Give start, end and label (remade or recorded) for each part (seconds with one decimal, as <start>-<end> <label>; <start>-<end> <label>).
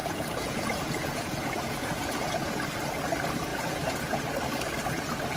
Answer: 0.0-2.3 remade; 2.3-3.5 recorded; 3.5-4.2 remade; 4.2-5.4 recorded